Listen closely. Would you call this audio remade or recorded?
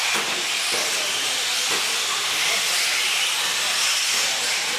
recorded